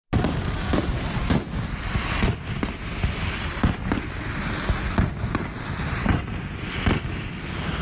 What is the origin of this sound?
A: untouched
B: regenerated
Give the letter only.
A